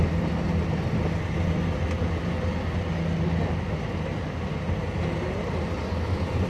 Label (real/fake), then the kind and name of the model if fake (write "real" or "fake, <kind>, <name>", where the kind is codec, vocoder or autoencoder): real